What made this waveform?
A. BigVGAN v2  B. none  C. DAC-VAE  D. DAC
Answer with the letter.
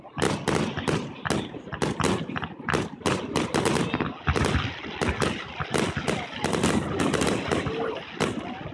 B